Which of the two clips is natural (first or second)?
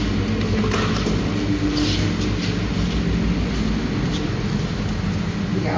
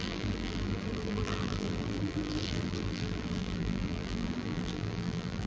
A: first